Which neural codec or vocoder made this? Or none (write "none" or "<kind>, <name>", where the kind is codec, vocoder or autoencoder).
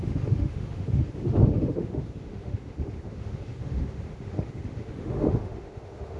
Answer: autoencoder, DAC-VAE